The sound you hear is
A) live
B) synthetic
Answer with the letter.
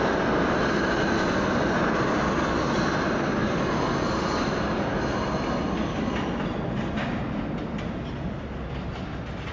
A